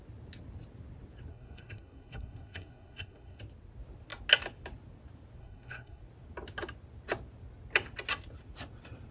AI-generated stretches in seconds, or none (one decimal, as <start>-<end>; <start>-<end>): 1.3-3.4; 5.4-6.0